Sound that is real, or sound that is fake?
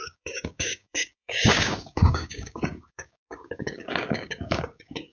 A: fake